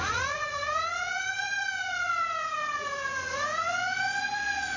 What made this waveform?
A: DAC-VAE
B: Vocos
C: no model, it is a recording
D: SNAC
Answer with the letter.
B